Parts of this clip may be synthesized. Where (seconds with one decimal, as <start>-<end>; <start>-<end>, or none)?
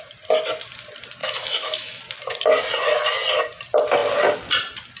1.2-2.0